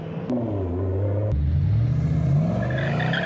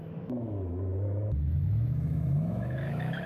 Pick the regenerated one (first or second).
second